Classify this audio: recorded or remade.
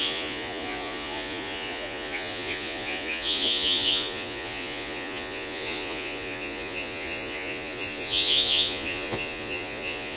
remade